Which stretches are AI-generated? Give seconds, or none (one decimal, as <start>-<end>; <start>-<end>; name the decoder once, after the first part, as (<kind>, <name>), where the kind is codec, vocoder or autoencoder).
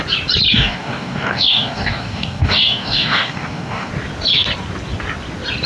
0.5-3.9 (codec, DAC)